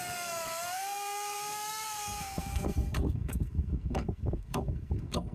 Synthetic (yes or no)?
yes